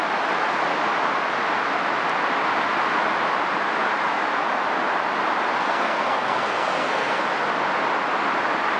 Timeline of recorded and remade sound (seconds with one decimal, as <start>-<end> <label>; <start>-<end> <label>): 0.0-5.6 recorded; 5.6-7.2 remade; 7.2-8.8 recorded